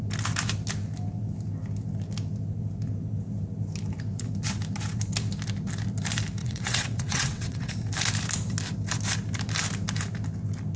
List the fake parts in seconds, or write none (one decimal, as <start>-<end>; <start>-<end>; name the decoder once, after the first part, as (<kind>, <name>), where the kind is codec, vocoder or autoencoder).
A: 6.4-7.7 (vocoder, WaveNeXt)